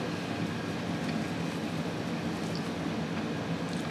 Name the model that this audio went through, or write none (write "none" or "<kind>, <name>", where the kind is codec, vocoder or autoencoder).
none